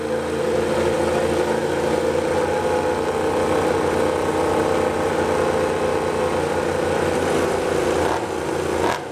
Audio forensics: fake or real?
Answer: real